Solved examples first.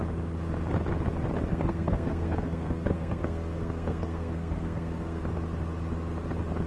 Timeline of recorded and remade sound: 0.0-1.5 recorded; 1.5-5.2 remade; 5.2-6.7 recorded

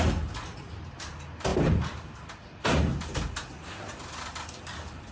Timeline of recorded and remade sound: 0.0-0.5 recorded; 0.5-1.0 remade; 1.0-5.1 recorded

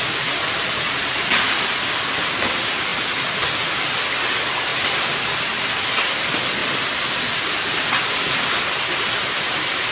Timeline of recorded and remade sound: 0.0-4.7 recorded; 4.7-5.7 remade; 5.7-9.9 recorded

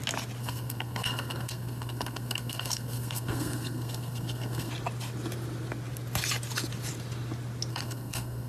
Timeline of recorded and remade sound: 0.0-0.4 recorded; 0.4-4.7 remade; 4.7-7.7 recorded; 7.7-8.5 remade

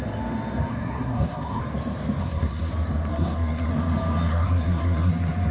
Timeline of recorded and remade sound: 0.0-0.7 recorded; 0.7-1.6 remade; 1.6-2.2 recorded; 2.2-2.7 remade; 2.7-3.1 recorded; 3.1-3.7 remade; 3.7-4.3 recorded; 4.3-5.1 remade; 5.1-5.5 recorded